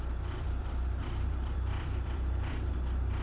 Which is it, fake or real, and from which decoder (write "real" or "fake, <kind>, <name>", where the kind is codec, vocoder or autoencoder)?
fake, vocoder, BigVGAN v2